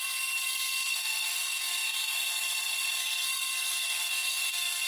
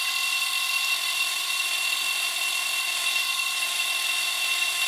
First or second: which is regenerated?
first